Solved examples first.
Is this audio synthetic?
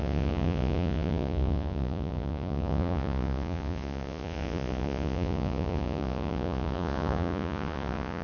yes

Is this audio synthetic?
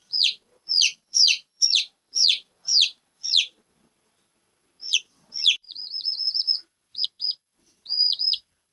yes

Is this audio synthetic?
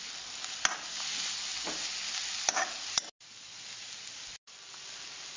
no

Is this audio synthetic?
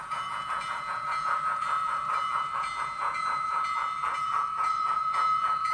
yes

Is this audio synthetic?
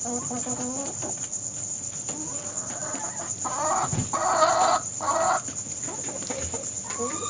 no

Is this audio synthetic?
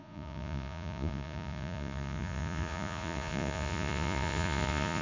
yes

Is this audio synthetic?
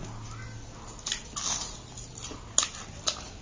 no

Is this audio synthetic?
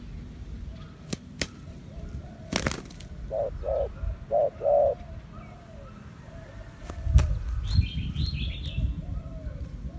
no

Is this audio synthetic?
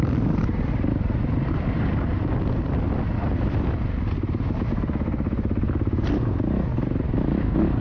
no